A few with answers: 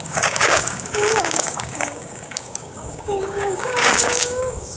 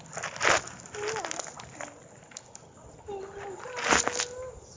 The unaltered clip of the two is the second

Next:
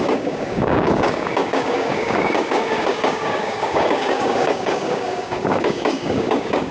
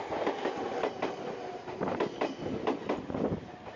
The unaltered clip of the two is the second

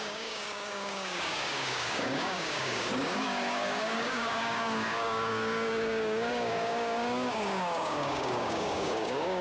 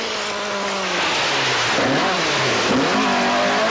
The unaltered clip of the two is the second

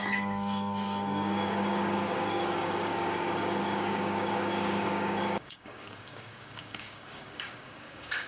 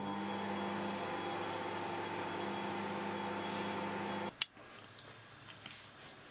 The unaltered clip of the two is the second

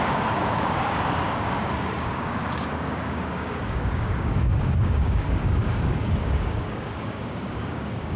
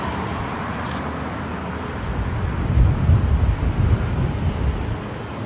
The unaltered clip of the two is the second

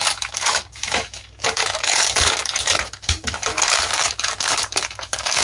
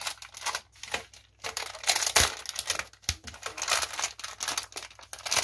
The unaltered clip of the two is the second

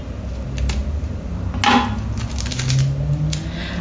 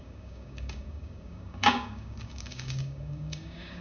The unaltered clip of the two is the first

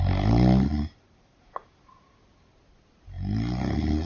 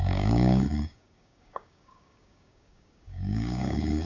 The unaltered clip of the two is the first